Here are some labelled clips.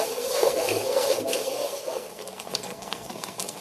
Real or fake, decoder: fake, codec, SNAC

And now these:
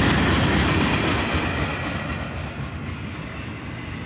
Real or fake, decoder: real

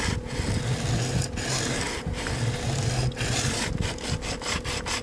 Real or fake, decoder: real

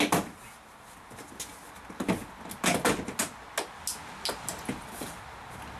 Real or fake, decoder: real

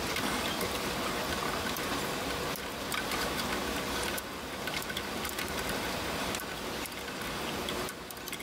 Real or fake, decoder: real